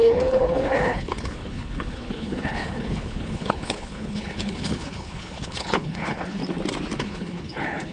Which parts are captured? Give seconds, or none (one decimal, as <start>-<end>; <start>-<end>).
6.4-7.0